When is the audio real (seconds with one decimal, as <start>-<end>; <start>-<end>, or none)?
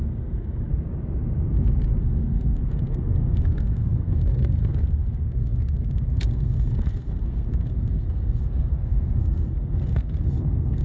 0.7-2.0